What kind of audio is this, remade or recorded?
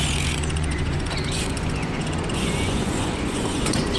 remade